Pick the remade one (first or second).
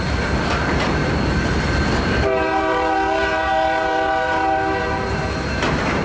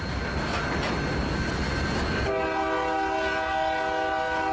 first